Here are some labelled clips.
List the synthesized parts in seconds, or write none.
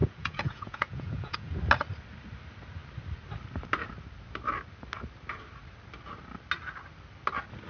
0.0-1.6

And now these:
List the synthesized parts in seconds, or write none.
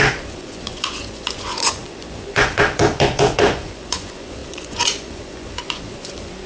0.0-6.5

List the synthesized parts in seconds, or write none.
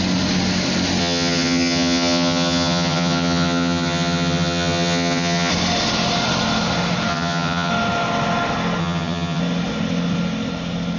1.0-5.5; 7.1-7.7; 8.8-9.4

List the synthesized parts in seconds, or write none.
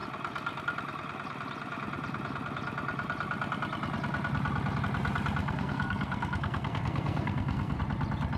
5.4-7.8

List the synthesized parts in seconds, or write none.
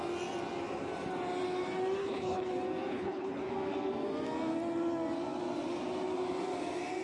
2.0-2.5; 2.9-3.5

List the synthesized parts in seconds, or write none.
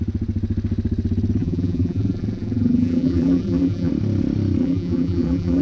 1.4-3.9; 4.6-5.6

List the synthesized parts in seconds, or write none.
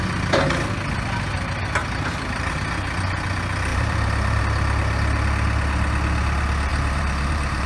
1.8-2.5; 3.7-4.4; 6.7-7.7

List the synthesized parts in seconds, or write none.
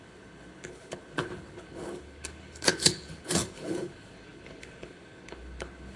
0.0-6.0